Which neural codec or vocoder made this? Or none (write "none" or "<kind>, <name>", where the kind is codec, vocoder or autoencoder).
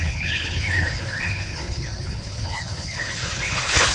codec, HILCodec